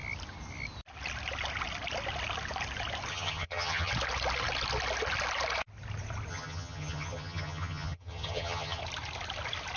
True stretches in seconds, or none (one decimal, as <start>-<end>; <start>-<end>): 0.0-3.1; 3.9-6.3; 8.8-9.8